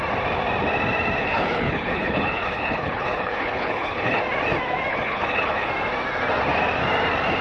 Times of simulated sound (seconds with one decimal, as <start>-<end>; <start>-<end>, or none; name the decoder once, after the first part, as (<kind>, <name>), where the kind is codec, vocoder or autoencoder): 1.2-4.2 (codec, HILCodec); 4.9-5.7